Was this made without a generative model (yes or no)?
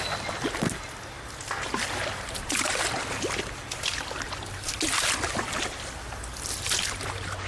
yes